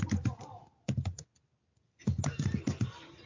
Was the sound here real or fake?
real